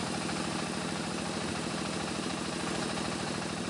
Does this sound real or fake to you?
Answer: fake